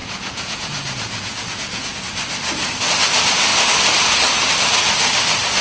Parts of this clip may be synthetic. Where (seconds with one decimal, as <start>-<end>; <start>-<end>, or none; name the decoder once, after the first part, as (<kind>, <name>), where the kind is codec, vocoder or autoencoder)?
0.0-2.0 (vocoder, Vocos)